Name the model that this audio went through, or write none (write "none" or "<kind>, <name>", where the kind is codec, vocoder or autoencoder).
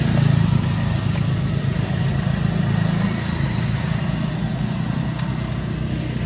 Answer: none